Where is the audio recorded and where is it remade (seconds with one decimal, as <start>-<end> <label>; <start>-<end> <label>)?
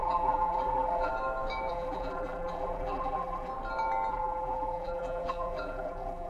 0.0-1.1 remade; 1.1-1.7 recorded; 1.7-3.5 remade; 3.5-4.1 recorded; 4.1-6.3 remade